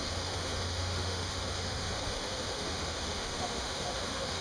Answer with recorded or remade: remade